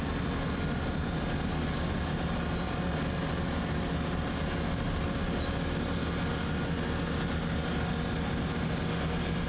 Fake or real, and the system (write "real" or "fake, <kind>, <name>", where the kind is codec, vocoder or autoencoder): real